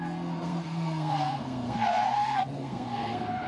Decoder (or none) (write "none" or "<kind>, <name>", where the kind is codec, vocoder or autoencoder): codec, SNAC